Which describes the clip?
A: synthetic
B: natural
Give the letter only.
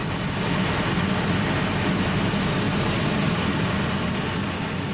B